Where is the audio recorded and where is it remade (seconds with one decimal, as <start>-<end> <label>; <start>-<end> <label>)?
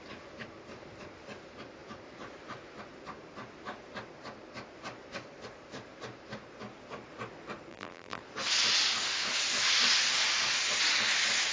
0.0-7.7 recorded; 7.7-8.2 remade; 8.2-11.5 recorded